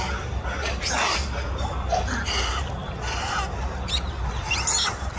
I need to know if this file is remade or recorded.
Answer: recorded